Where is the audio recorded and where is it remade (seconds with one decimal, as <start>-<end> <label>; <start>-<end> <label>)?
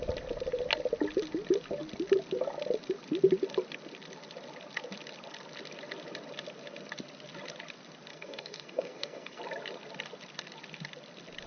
0.0-8.1 recorded; 8.1-9.4 remade; 9.4-11.5 recorded